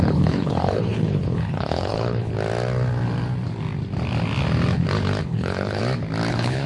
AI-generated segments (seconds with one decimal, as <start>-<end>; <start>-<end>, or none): 0.0-2.3; 5.2-5.8; 6.3-6.7